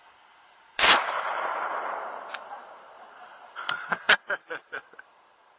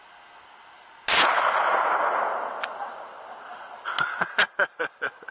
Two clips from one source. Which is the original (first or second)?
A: second